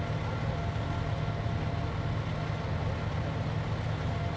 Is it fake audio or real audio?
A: real